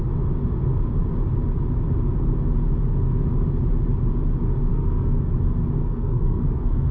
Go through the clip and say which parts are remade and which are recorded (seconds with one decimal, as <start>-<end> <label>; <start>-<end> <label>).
0.0-4.7 recorded; 4.7-5.3 remade; 5.3-5.8 recorded; 5.8-6.9 remade